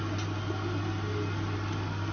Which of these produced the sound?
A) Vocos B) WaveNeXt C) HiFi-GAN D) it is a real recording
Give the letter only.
D